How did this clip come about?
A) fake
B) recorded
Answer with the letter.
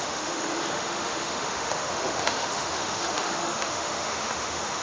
A